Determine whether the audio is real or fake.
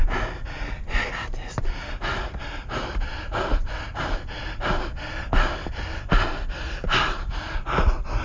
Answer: real